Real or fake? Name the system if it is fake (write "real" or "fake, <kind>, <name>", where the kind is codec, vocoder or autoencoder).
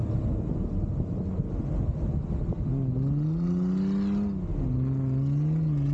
real